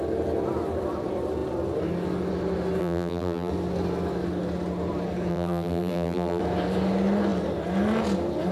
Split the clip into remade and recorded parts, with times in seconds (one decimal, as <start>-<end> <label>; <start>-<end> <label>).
0.0-2.8 recorded; 2.8-3.5 remade; 3.5-5.3 recorded; 5.3-6.4 remade; 6.4-8.5 recorded